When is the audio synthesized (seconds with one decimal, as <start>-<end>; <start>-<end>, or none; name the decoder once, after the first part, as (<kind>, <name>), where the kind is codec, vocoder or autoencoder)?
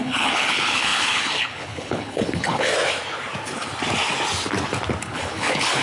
0.0-2.7 (codec, HILCodec); 5.0-5.8